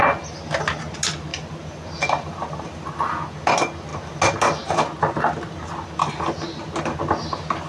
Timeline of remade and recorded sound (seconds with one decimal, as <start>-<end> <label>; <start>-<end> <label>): 0.0-1.3 recorded; 1.3-2.9 remade; 2.9-7.7 recorded